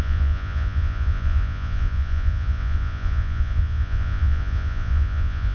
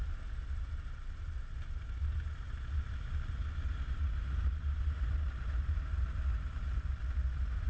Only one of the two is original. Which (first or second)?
second